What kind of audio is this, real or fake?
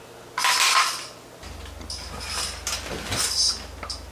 real